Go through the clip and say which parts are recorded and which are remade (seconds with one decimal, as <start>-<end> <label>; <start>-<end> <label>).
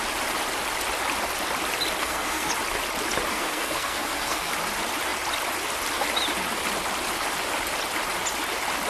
0.0-2.0 recorded; 2.0-2.5 remade; 2.5-3.3 recorded; 3.3-4.5 remade; 4.5-8.9 recorded